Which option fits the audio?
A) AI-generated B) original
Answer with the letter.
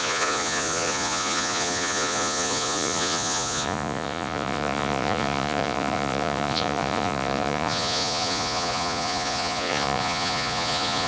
A